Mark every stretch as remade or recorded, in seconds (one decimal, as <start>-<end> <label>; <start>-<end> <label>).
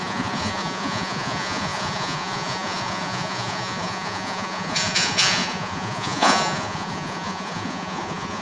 0.0-8.4 remade